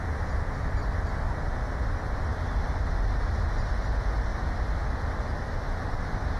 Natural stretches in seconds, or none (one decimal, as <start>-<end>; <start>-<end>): 0.0-0.8; 1.4-2.3; 2.8-6.4